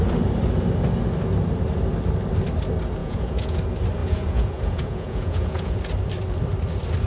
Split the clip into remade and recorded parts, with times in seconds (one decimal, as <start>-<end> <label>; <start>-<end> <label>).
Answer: 0.0-3.0 recorded; 3.0-3.6 remade; 3.6-4.0 recorded; 4.0-5.8 remade; 5.8-7.1 recorded